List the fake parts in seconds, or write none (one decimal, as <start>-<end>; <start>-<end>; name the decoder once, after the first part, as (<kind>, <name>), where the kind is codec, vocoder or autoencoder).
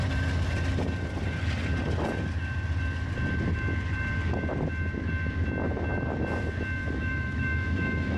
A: 6.8-8.2 (autoencoder, DAC-VAE)